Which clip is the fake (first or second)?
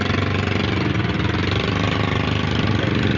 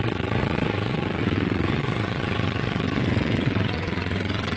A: second